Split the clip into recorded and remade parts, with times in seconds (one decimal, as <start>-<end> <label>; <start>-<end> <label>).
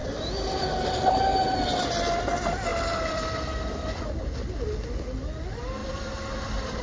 0.0-0.7 remade; 0.7-2.7 recorded; 2.7-4.0 remade; 4.0-5.8 recorded; 5.8-6.8 remade